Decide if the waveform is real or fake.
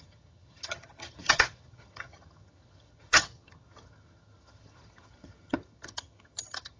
fake